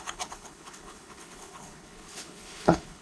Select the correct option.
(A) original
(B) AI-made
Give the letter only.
B